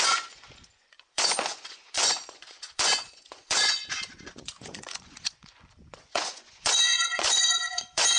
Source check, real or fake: fake